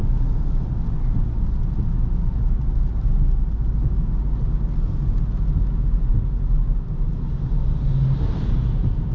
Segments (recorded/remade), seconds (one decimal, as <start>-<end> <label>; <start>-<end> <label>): 0.0-9.1 recorded